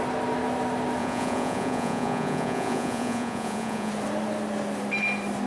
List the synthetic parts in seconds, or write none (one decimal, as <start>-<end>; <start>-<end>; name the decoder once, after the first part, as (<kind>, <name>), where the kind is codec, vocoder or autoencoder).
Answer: 1.0-3.9 (vocoder, Vocos)